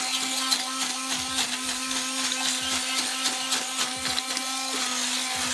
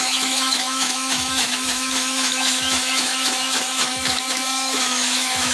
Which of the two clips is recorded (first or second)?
first